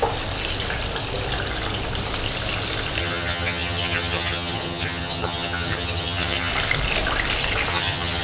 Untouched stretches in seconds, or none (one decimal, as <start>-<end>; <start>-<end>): 0.0-3.0; 6.5-7.7